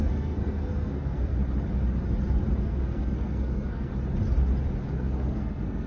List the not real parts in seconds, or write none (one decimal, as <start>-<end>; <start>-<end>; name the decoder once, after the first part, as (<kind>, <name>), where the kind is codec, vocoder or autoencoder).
0.0-1.4 (codec, SNAC); 2.6-3.9; 4.9-5.9